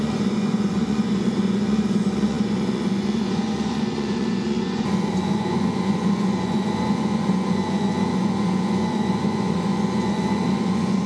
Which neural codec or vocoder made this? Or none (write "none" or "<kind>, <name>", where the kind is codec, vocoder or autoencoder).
vocoder, Vocos